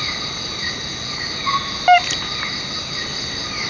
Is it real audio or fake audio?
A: real